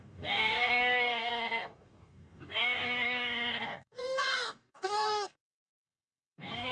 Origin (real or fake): fake